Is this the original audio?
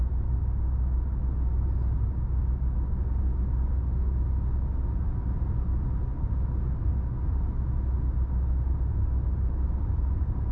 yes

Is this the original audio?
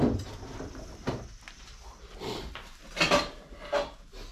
yes